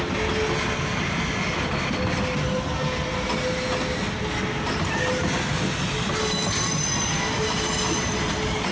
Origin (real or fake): real